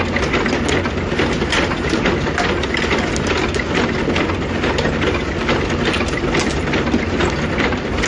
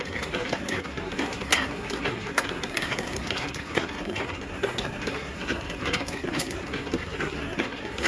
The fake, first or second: second